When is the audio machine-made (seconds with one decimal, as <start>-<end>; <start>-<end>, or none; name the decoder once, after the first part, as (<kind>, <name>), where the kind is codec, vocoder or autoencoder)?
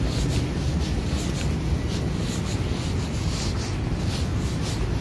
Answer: none